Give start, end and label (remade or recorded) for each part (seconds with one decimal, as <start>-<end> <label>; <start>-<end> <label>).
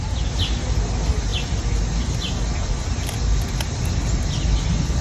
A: 0.0-5.0 recorded